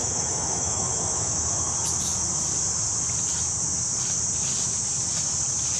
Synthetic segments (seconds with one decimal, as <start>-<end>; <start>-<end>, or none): 0.0-1.6